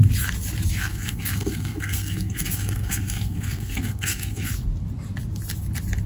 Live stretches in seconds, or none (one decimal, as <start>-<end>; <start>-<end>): 0.0-0.8; 4.5-6.1